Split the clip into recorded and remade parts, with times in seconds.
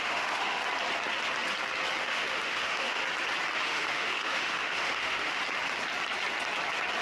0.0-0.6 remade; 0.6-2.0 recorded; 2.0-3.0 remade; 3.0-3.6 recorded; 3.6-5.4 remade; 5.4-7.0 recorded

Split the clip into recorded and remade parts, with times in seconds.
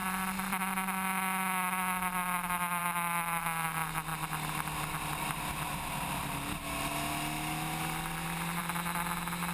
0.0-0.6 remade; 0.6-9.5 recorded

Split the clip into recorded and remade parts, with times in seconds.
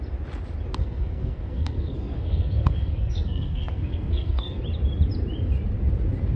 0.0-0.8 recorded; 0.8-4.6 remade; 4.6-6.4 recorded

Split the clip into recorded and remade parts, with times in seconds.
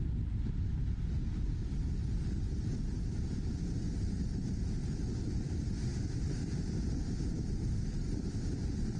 0.0-5.9 recorded; 5.9-6.6 remade; 6.6-9.0 recorded